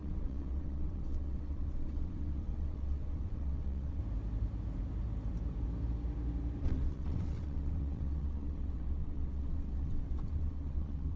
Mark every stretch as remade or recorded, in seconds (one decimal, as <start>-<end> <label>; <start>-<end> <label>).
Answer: 0.0-4.0 remade; 4.0-6.6 recorded; 6.6-11.2 remade